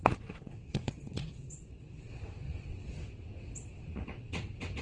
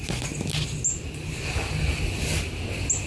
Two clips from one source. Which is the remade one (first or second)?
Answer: first